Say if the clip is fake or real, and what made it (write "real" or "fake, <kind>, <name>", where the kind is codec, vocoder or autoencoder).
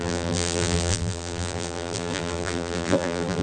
fake, vocoder, BigVGAN v2